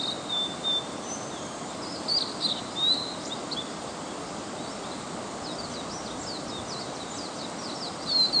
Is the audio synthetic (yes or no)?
no